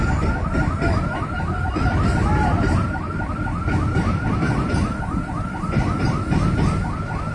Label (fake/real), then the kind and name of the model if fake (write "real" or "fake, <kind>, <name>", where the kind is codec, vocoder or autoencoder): real